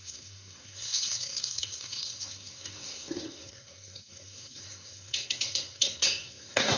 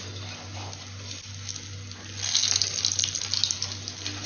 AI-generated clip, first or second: first